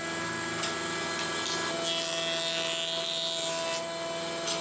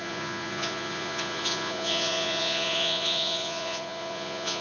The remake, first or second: second